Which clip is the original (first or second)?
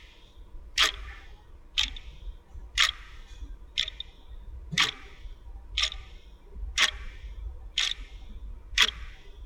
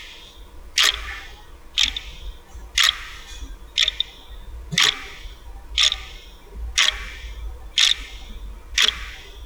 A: second